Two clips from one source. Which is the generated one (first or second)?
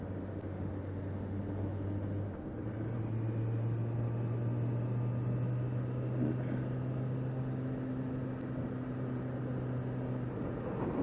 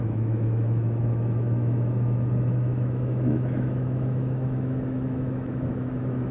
second